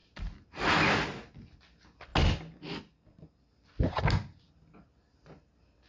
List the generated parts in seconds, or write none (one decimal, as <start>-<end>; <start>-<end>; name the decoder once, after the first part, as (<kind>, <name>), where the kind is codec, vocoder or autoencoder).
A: none